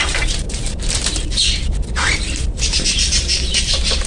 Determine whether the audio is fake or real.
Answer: fake